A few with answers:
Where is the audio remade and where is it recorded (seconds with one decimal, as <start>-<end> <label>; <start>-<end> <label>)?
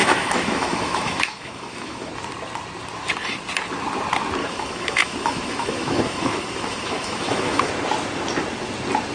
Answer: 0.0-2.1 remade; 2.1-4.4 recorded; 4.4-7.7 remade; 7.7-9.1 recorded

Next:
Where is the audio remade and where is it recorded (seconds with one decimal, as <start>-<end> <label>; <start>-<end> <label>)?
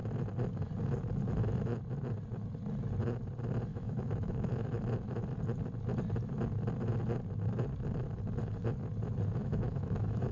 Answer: 0.0-3.7 recorded; 3.7-4.8 remade; 4.8-9.4 recorded; 9.4-10.3 remade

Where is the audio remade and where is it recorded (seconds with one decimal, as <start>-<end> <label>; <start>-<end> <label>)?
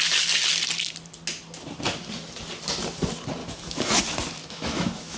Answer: 0.0-3.4 recorded; 3.4-4.0 remade; 4.0-4.4 recorded; 4.4-5.2 remade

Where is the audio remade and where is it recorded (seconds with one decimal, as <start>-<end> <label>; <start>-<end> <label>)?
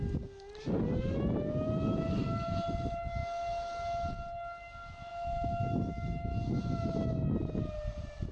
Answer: 0.0-5.1 recorded; 5.1-6.6 remade; 6.6-8.3 recorded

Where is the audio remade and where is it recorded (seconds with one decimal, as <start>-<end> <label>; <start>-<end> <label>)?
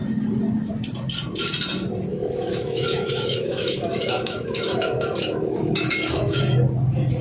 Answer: 0.0-2.1 recorded; 2.1-6.4 remade; 6.4-7.2 recorded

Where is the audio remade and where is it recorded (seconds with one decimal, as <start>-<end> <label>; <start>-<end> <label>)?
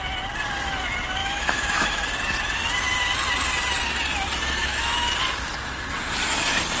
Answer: 0.0-1.2 recorded; 1.2-1.9 remade; 1.9-4.6 recorded; 4.6-5.1 remade; 5.1-6.8 recorded